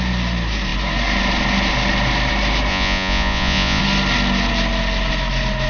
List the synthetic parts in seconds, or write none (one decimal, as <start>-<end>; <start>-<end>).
2.7-3.8